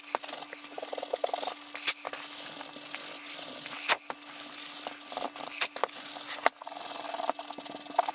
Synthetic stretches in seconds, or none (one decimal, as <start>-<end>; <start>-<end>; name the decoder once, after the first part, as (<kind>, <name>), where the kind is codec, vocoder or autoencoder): none